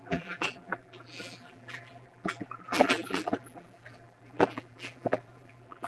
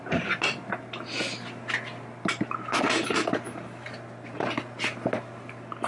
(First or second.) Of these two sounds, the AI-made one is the first